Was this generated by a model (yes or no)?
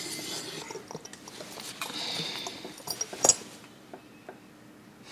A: no